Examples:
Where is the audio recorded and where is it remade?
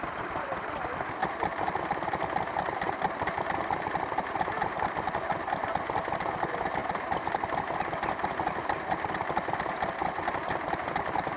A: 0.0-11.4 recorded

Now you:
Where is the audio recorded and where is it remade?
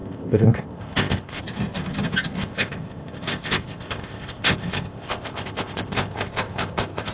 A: 0.0-1.4 remade; 1.4-2.4 recorded; 2.4-7.1 remade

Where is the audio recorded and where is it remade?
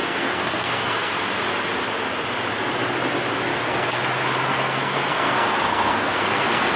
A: 0.0-1.1 remade; 1.1-3.5 recorded; 3.5-4.0 remade; 4.0-4.5 recorded; 4.5-6.8 remade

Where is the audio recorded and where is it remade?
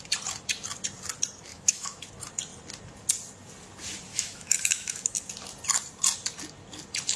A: 0.0-1.5 recorded; 1.5-2.1 remade; 2.1-4.1 recorded; 4.1-5.3 remade; 5.3-7.2 recorded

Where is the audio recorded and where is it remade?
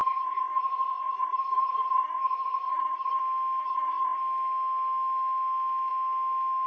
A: 0.0-3.2 remade; 3.2-3.6 recorded; 3.6-4.2 remade; 4.2-6.7 recorded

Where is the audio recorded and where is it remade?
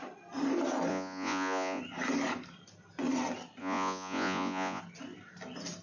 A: 0.0-0.9 recorded; 0.9-1.8 remade; 1.8-3.6 recorded; 3.6-4.8 remade; 4.8-5.8 recorded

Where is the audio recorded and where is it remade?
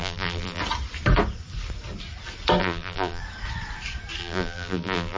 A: 0.0-0.6 remade; 0.6-2.6 recorded; 2.6-3.2 remade; 3.2-4.2 recorded; 4.2-5.2 remade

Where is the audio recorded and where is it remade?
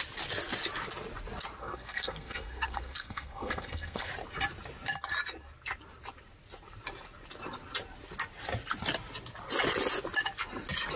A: 0.0-1.6 recorded; 1.6-4.1 remade; 4.1-11.0 recorded